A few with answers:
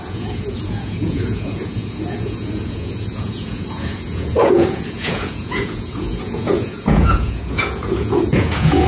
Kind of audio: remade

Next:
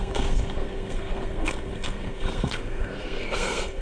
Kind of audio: remade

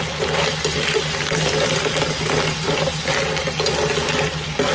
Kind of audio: recorded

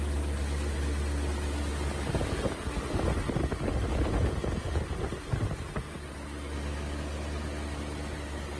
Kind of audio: recorded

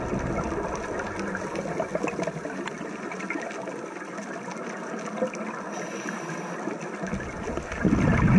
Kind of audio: recorded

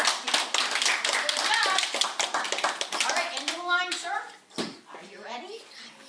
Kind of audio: recorded